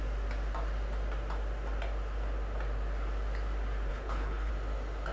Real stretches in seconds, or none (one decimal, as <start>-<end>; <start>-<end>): 0.0-3.9; 4.5-5.1